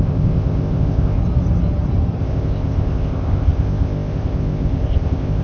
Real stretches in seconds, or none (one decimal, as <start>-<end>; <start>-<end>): 1.2-2.2